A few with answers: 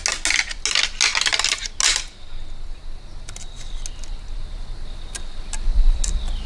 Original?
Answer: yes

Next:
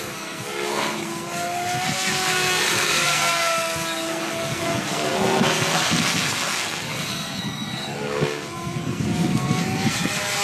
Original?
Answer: no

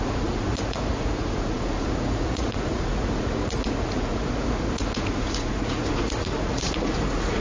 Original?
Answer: no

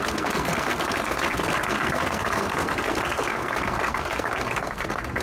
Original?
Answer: no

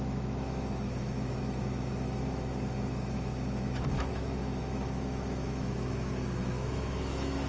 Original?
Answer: no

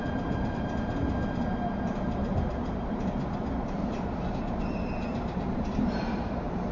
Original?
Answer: no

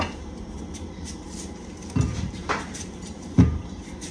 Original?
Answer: no